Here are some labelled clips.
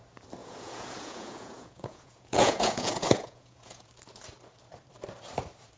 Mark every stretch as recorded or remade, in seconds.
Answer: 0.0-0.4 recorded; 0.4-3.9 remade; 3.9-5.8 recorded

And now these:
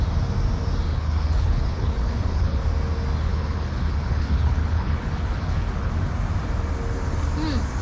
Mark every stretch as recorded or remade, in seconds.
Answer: 0.0-0.9 recorded; 0.9-2.6 remade; 2.6-3.3 recorded; 3.3-5.9 remade; 5.9-7.8 recorded

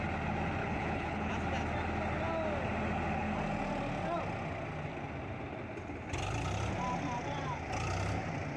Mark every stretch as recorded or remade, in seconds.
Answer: 0.0-0.6 recorded; 0.6-1.3 remade; 1.3-8.6 recorded

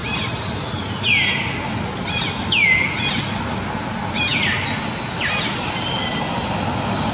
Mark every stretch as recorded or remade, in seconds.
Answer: 0.0-7.1 recorded